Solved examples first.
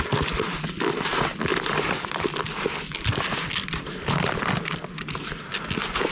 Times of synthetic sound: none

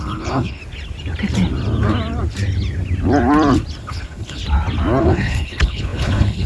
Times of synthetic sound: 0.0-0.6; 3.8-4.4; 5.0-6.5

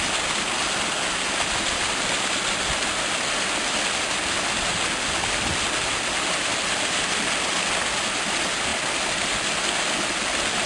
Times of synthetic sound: none

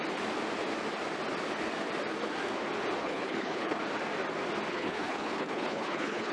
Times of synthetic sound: 3.0-3.8; 4.7-6.3